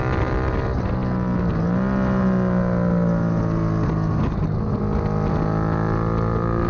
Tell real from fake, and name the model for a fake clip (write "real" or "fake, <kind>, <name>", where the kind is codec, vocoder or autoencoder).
real